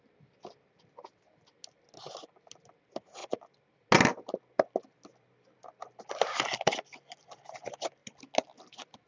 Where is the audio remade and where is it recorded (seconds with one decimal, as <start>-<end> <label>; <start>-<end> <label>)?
0.0-9.1 recorded